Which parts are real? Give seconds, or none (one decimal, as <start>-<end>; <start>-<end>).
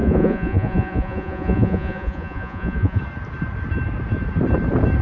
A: 3.0-5.0